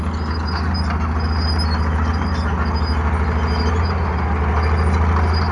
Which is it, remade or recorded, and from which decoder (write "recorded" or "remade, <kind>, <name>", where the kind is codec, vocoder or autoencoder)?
recorded